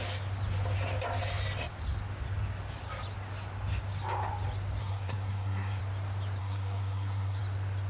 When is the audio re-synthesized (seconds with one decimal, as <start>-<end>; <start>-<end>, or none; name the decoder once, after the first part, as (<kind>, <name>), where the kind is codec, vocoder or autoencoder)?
4.8-5.8 (codec, SNAC); 6.4-7.4